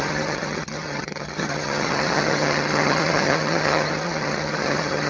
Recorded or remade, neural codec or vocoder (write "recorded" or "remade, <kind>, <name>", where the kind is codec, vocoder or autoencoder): remade, vocoder, HiFi-GAN